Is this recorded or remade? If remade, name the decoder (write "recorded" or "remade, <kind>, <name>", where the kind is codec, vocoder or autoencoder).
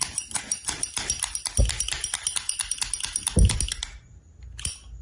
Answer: recorded